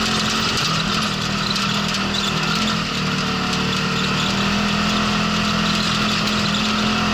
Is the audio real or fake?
real